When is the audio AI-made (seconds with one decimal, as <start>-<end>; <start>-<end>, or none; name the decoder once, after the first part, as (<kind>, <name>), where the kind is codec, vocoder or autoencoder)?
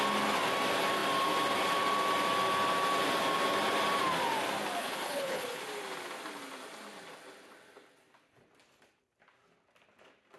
4.8-5.6 (codec, HILCodec)